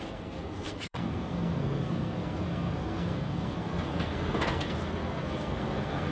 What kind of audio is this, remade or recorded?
remade